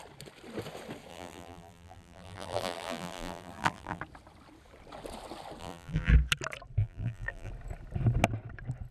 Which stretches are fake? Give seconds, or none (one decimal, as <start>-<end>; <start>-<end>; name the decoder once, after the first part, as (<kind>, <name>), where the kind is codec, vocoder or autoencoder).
1.1-4.0 (vocoder, BigVGAN v2); 5.6-6.1; 6.8-7.5